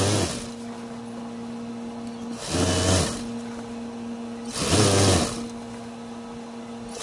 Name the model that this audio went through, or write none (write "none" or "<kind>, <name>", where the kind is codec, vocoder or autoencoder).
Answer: none